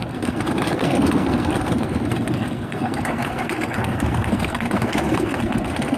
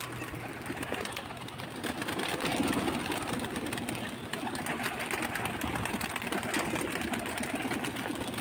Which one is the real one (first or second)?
second